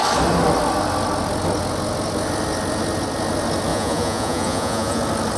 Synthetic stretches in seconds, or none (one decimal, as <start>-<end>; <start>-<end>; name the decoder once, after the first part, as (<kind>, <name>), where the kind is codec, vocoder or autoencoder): 3.7-5.0 (vocoder, Vocos)